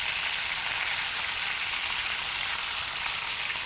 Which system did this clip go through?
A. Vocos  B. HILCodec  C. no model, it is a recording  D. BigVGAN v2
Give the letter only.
C